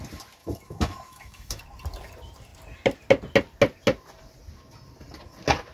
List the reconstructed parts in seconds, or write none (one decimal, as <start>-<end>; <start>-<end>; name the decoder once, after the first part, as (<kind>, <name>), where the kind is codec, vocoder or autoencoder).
0.4-1.6 (autoencoder, DAC-VAE)